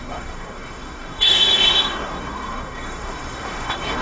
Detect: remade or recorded remade